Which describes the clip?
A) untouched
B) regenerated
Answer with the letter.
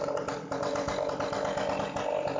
A